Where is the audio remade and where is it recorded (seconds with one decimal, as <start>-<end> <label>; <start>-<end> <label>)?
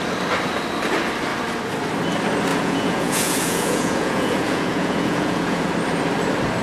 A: 0.0-2.5 recorded; 2.5-5.7 remade; 5.7-6.6 recorded